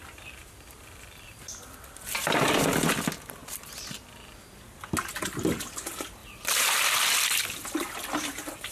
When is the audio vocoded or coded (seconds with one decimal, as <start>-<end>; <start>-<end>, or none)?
0.0-2.4; 6.2-7.3